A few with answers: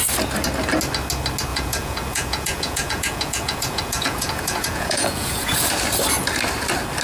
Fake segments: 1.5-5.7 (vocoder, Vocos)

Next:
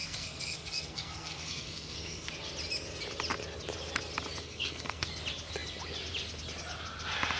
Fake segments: 0.0-2.3 (codec, SNAC); 4.4-5.1

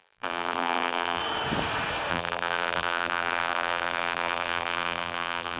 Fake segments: 0.0-1.2 (vocoder, BigVGAN v2); 2.1-5.6